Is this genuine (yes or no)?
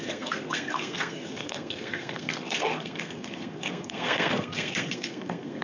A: no